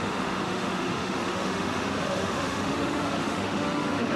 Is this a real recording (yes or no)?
no